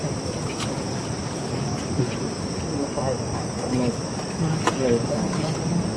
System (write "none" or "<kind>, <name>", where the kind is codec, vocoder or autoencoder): none